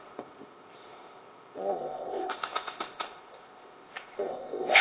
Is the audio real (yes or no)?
no